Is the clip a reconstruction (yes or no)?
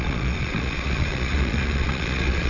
yes